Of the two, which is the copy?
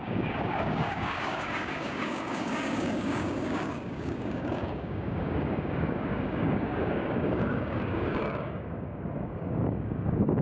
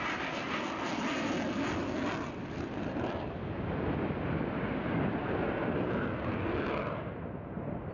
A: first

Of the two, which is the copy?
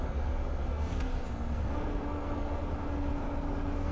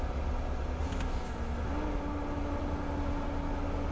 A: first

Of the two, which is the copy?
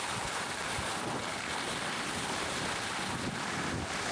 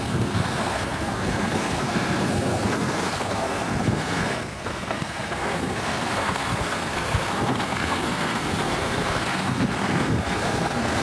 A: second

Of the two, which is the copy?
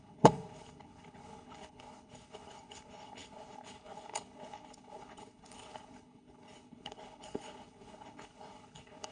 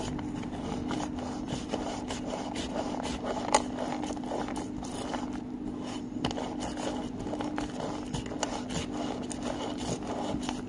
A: first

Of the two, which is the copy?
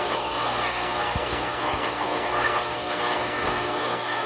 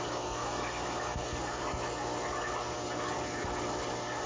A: first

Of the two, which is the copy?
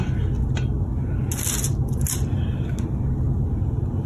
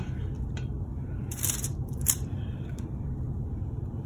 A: second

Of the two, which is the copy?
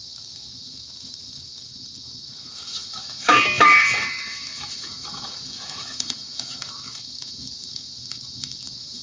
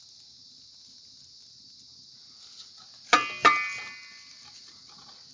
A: first